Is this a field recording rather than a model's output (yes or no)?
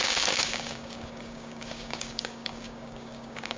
no